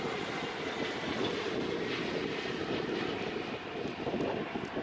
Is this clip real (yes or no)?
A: yes